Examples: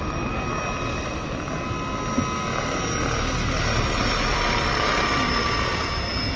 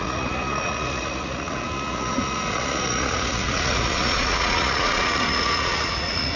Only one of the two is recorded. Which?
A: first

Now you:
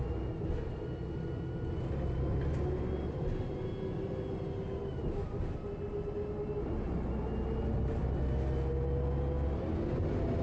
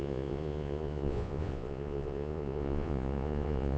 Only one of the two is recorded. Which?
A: first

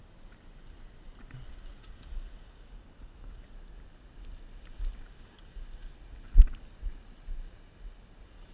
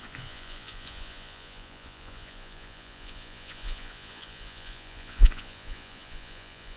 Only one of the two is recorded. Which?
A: first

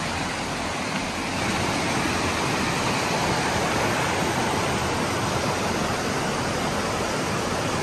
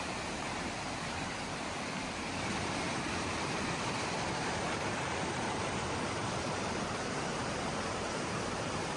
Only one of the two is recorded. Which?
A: first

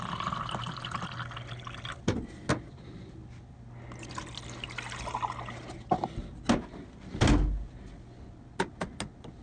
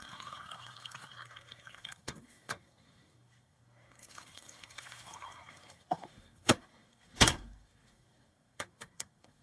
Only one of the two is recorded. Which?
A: first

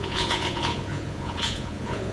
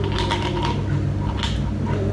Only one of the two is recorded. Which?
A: second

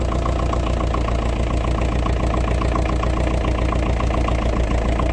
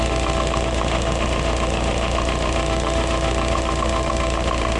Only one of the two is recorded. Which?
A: first